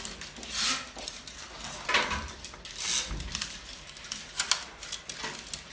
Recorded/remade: recorded